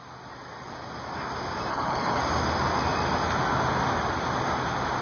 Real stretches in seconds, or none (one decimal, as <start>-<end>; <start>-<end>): 0.0-1.7; 2.2-5.0